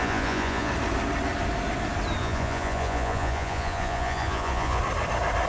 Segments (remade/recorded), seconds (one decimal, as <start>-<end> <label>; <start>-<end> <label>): 0.0-0.7 remade; 0.7-2.2 recorded; 2.2-4.8 remade; 4.8-5.5 recorded

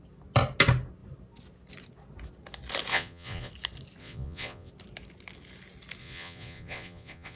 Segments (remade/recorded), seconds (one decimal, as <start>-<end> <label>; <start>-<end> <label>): 0.0-2.9 recorded; 2.9-3.5 remade; 3.5-4.0 recorded; 4.0-4.7 remade; 4.7-6.0 recorded; 6.0-7.4 remade

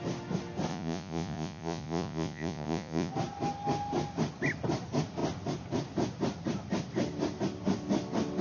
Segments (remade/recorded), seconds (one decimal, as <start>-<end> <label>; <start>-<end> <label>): 0.0-0.7 recorded; 0.7-3.1 remade; 3.1-8.4 recorded

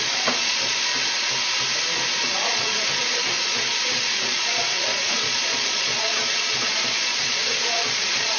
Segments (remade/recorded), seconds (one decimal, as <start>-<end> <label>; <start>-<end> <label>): 0.0-0.9 remade; 0.9-2.2 recorded; 2.2-8.4 remade